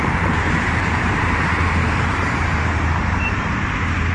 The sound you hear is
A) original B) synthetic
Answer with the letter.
B